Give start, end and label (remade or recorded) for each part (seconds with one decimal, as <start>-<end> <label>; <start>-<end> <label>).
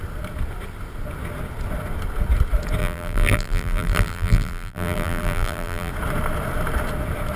0.0-2.8 recorded; 2.8-5.9 remade; 5.9-7.4 recorded